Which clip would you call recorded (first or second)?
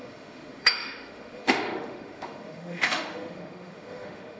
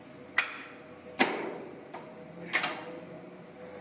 second